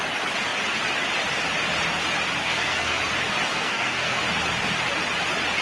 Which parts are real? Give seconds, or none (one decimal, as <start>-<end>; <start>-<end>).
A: 0.0-2.4; 3.0-3.5; 4.2-5.6